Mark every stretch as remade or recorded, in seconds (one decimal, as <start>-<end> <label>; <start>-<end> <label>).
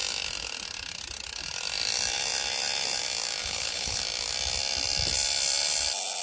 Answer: 0.0-3.4 recorded; 3.4-4.0 remade; 4.0-6.2 recorded